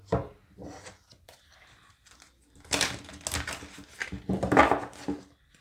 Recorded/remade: recorded